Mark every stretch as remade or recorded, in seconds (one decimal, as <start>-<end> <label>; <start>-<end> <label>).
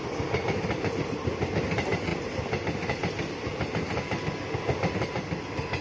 0.0-5.8 recorded